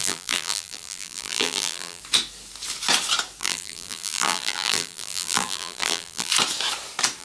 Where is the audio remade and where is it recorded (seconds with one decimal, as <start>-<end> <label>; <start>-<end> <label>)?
0.0-2.0 remade; 2.0-3.4 recorded; 3.4-6.3 remade; 6.3-7.2 recorded